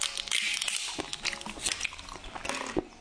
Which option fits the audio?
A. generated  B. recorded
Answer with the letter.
B